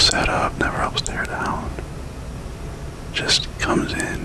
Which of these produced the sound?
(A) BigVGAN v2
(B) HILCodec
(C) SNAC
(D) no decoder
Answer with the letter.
D